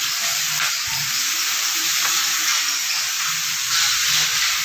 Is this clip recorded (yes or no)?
no